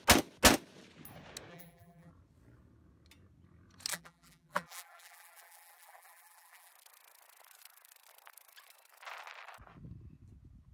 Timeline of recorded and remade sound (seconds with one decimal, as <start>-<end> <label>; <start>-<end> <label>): 0.0-1.5 recorded; 1.5-2.1 remade; 2.1-3.9 recorded; 3.9-6.7 remade; 6.7-10.7 recorded